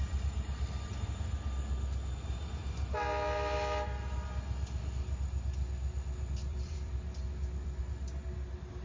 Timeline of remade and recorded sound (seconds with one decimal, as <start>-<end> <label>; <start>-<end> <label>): 0.0-6.5 recorded; 6.5-7.8 remade; 7.8-8.8 recorded